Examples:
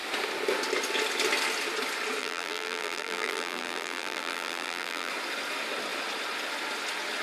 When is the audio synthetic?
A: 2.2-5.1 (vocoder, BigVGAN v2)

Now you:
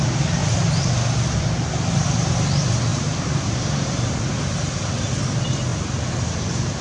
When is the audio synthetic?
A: 0.4-0.9 (vocoder, BigVGAN v2); 2.9-4.2

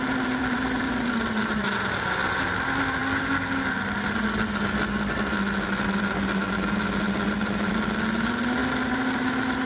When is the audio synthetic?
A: 0.4-1.1 (vocoder, BigVGAN v2); 8.6-9.2

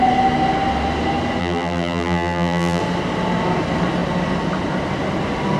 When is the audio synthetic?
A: 1.4-2.8 (vocoder, BigVGAN v2)

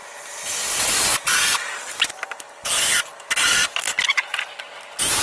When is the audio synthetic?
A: 3.8-4.6 (vocoder, BigVGAN v2)

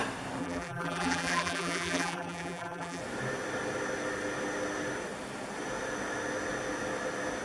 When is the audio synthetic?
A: 0.4-3.0 (vocoder, BigVGAN v2)

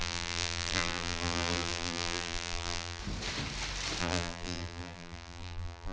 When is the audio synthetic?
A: 0.0-3.0 (vocoder, BigVGAN v2); 4.0-5.9

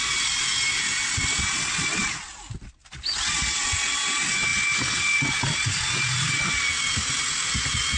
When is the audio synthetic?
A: none